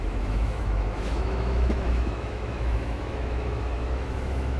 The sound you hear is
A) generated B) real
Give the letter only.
A